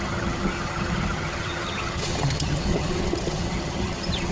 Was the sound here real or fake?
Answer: fake